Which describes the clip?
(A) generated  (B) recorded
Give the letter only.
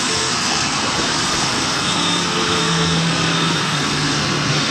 A